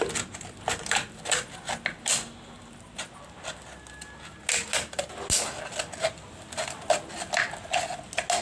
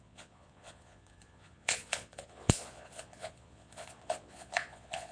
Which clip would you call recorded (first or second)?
first